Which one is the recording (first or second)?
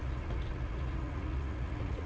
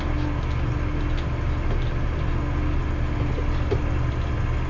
second